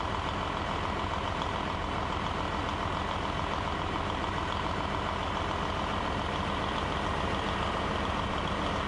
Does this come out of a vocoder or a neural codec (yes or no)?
no